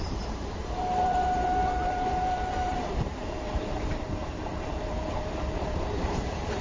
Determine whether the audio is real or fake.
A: fake